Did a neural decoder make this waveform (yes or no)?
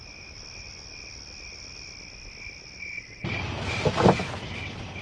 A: no